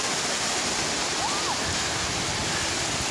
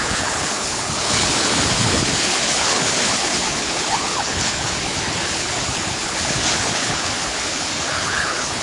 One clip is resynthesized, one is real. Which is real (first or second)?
first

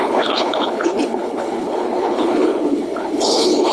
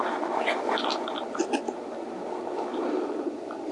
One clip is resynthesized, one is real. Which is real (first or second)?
second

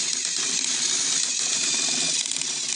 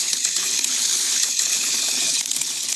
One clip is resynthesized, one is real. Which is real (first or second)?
first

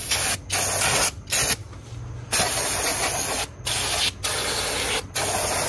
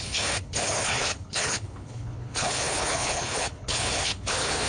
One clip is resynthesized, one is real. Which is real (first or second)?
first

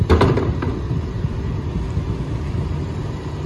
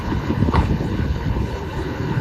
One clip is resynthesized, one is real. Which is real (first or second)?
first